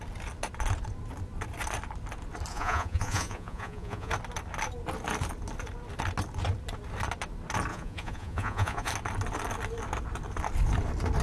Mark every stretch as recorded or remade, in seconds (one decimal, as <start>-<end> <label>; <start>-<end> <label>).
0.0-2.5 recorded; 2.5-4.1 remade; 4.1-7.7 recorded; 7.7-8.9 remade; 8.9-11.2 recorded